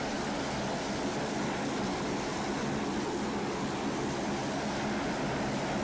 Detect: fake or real real